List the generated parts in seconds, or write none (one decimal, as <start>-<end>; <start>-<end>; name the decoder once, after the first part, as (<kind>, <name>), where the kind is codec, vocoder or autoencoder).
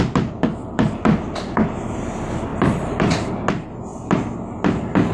0.6-2.0 (vocoder, BigVGAN v2); 2.5-3.3